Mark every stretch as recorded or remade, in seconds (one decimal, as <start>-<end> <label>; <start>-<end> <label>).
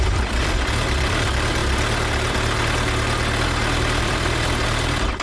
0.0-1.6 remade; 1.6-4.0 recorded; 4.0-5.2 remade